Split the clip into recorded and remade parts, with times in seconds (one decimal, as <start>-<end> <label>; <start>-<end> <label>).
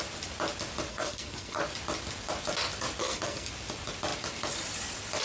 0.0-0.9 recorded; 0.9-1.6 remade; 1.6-3.0 recorded; 3.0-3.5 remade; 3.5-5.2 recorded